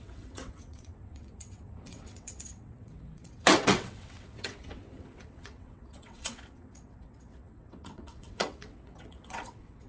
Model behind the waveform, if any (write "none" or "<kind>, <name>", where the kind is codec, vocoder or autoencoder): vocoder, WaveNeXt